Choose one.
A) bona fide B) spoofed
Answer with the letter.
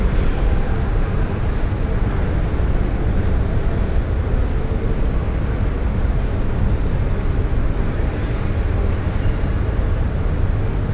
A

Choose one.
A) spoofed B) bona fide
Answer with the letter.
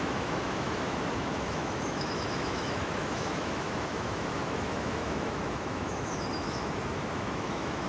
A